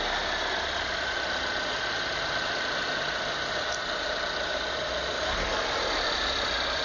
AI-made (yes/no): no